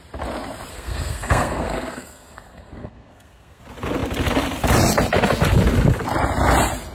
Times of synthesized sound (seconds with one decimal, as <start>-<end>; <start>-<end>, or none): 0.7-3.6